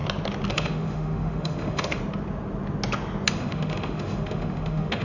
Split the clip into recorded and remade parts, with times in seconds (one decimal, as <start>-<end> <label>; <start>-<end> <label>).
0.0-0.5 recorded; 0.5-2.0 remade; 2.0-3.3 recorded; 3.3-5.0 remade